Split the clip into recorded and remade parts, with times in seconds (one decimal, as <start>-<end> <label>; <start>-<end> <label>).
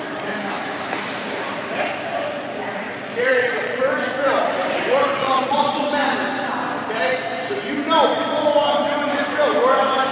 0.0-3.3 recorded; 3.3-3.8 remade; 3.8-5.2 recorded; 5.2-5.9 remade; 5.9-10.1 recorded